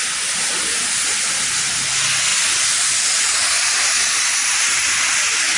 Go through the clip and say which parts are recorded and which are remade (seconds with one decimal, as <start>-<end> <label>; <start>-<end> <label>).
0.0-5.6 recorded